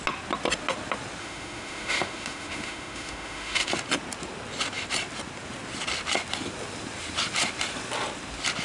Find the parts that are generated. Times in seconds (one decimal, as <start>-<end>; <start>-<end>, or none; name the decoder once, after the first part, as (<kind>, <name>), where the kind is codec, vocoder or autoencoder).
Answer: 1.2-3.7 (autoencoder, DAC-VAE)